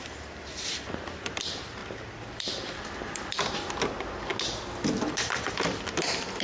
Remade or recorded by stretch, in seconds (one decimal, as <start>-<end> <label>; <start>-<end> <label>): 0.0-1.8 remade; 1.8-2.3 recorded; 2.3-4.3 remade; 4.3-5.0 recorded; 5.0-6.4 remade